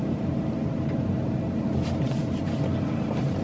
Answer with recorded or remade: recorded